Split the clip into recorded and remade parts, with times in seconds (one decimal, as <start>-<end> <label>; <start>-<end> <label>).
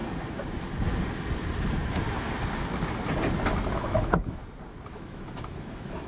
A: 0.0-3.7 recorded; 3.7-4.4 remade; 4.4-4.9 recorded; 4.9-6.1 remade